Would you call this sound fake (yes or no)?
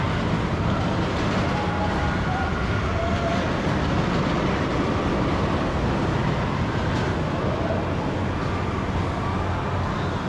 no